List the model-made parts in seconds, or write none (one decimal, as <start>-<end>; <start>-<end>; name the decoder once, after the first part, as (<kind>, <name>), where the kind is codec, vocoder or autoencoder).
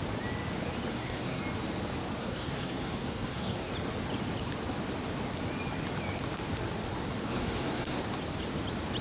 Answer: 0.9-1.4 (codec, SNAC); 2.2-3.7; 7.3-8.0